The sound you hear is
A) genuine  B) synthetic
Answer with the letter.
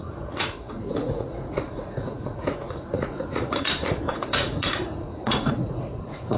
B